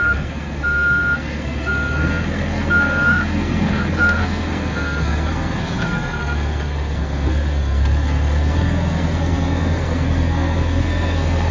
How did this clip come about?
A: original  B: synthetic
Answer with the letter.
B